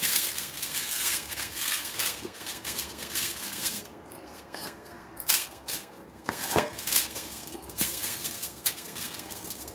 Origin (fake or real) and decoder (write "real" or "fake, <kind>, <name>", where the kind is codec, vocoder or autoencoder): fake, codec, SNAC